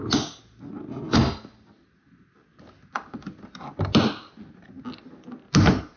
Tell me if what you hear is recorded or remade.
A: recorded